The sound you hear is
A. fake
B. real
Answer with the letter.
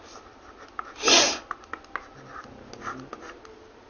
B